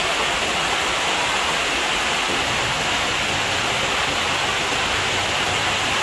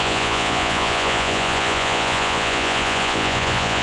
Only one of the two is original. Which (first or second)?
first